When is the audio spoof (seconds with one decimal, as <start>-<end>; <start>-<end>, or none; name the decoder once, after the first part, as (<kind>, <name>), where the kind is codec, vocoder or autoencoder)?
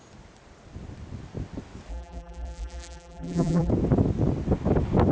1.9-3.7 (vocoder, BigVGAN v2)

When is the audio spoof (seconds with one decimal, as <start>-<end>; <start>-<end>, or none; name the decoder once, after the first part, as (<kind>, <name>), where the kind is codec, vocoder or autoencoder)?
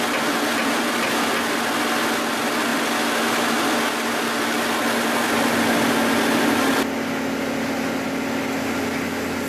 none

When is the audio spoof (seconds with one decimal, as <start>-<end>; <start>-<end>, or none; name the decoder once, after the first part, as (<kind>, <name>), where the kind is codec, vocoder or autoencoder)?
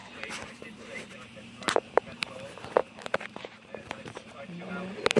0.0-2.3 (vocoder, BigVGAN v2); 2.8-4.7